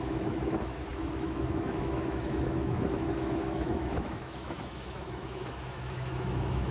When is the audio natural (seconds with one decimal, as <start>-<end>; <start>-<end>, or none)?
none